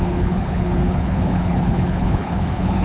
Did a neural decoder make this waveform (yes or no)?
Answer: yes